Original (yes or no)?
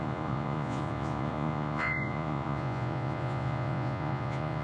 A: no